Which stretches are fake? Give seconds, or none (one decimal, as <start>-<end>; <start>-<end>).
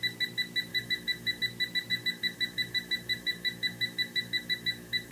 0.7-1.4; 1.9-5.1